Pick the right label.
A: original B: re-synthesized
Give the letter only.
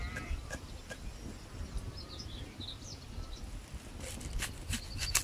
A